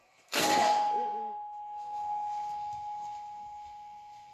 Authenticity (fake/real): fake